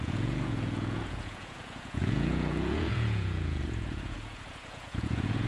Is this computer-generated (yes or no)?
yes